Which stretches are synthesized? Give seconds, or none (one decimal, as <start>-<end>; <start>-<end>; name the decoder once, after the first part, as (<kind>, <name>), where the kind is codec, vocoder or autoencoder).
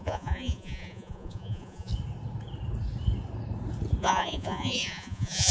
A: 0.0-1.9 (vocoder, Vocos); 4.0-5.5